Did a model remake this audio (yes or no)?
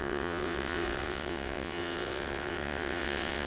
yes